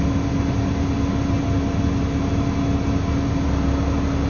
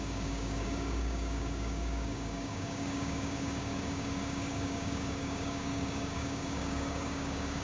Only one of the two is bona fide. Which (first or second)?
first